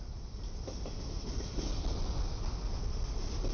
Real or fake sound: real